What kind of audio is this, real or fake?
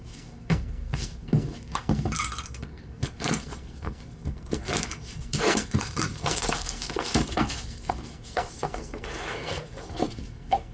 fake